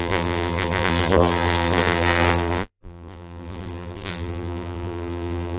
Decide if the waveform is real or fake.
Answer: fake